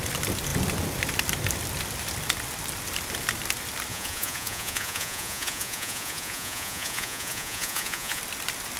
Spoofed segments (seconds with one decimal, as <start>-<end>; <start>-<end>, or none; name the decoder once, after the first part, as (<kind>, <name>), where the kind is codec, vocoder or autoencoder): 3.9-8.2 (vocoder, Vocos)